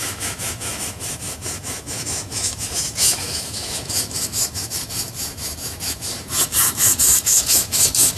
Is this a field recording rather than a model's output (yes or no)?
no